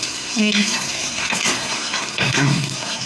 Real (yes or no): no